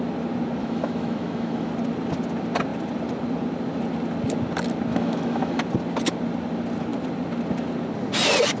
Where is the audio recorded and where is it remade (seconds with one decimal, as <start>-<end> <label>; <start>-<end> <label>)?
0.0-0.6 recorded; 0.6-1.7 remade; 1.7-4.9 recorded; 4.9-5.6 remade; 5.6-8.6 recorded